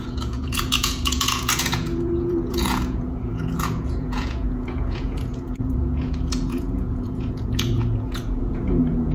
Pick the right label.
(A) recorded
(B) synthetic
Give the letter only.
B